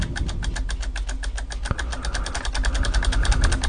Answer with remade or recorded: recorded